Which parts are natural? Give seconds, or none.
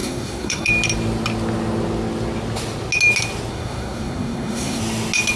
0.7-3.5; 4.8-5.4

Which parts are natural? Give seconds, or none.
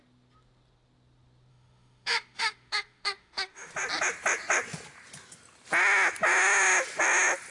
0.0-1.5; 3.7-7.5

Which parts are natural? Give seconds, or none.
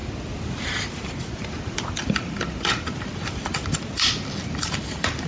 0.0-5.3